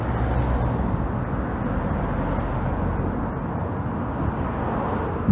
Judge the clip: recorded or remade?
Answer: recorded